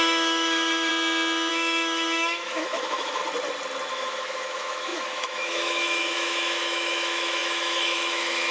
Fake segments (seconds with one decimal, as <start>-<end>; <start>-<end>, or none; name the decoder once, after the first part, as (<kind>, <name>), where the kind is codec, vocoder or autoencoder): 0.0-0.9 (autoencoder, DAC-VAE); 1.5-3.2; 3.9-8.5